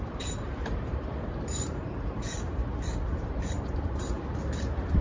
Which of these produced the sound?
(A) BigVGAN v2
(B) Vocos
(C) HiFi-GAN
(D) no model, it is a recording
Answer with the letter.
A